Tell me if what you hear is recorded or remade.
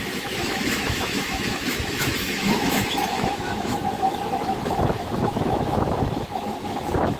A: remade